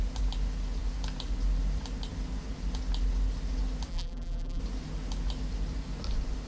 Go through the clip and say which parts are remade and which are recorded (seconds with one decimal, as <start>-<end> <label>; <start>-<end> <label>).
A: 0.0-3.9 recorded; 3.9-4.6 remade; 4.6-6.5 recorded